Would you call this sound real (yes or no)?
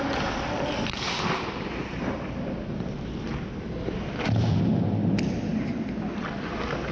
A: yes